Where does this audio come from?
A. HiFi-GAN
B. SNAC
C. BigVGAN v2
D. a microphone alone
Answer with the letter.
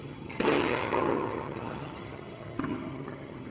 A